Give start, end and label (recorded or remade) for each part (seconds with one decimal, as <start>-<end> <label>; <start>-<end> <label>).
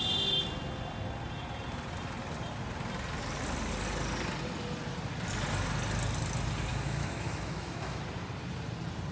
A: 0.0-6.7 recorded; 6.7-8.0 remade; 8.0-9.1 recorded